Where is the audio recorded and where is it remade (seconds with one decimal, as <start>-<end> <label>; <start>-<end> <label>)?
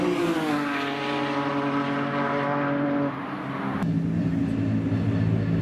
0.0-5.6 recorded